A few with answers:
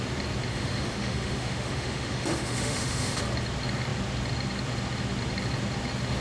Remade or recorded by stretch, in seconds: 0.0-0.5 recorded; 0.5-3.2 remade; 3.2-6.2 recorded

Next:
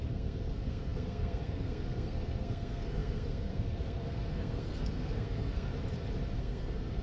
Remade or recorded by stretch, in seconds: 0.0-5.7 remade; 5.7-6.4 recorded; 6.4-7.0 remade

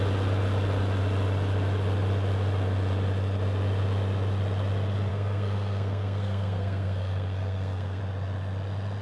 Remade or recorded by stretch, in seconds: 0.0-5.1 recorded; 5.1-8.0 remade; 8.0-9.0 recorded

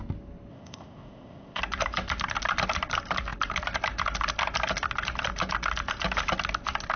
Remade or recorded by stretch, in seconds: 0.0-0.5 recorded; 0.5-1.6 remade; 1.6-7.0 recorded